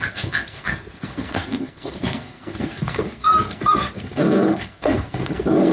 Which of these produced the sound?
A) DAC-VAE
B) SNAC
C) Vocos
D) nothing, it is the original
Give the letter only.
B